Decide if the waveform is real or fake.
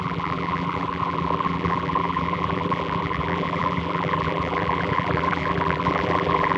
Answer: fake